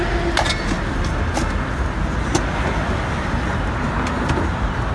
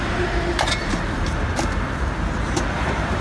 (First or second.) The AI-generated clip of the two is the second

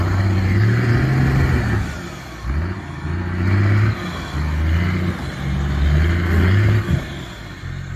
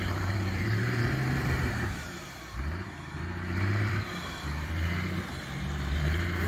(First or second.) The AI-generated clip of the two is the second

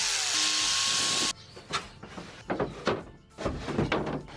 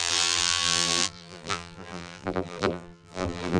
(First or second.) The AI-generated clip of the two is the second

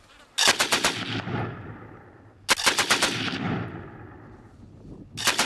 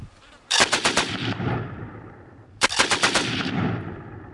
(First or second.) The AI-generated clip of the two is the second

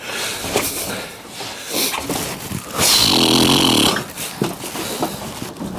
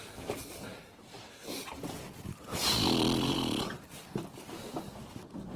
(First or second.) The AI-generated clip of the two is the second